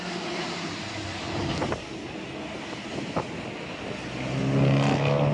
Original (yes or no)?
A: yes